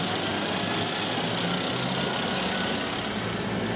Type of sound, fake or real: real